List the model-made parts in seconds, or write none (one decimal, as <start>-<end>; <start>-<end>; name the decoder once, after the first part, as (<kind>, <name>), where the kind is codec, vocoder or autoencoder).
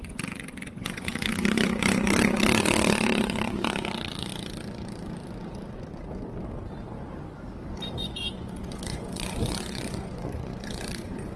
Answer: 0.0-4.3 (vocoder, Vocos); 8.0-11.4